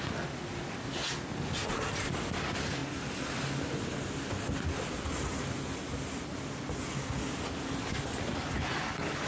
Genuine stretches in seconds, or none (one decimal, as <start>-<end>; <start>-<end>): 0.0-9.3

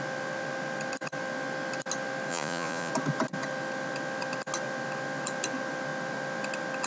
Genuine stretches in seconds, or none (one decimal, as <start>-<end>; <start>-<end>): 0.0-2.3; 2.9-6.9

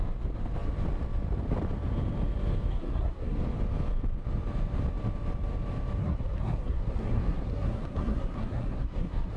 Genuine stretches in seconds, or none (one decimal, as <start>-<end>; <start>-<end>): 0.0-2.7; 3.4-6.0

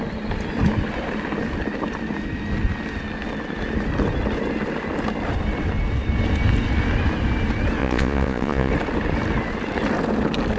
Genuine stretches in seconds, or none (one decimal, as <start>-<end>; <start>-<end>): 0.0-7.8; 8.7-10.6

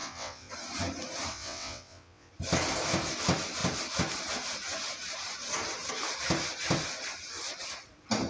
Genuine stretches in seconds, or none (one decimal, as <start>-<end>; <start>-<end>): 0.5-1.3; 2.3-8.3

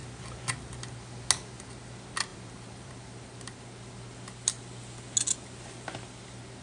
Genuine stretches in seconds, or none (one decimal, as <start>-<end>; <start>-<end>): 0.8-2.3; 3.0-6.6

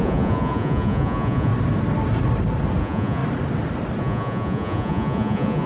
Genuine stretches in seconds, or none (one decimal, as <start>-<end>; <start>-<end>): 1.5-2.8; 3.2-4.0